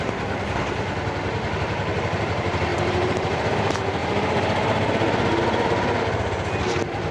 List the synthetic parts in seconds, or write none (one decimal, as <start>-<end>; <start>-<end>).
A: 2.7-3.5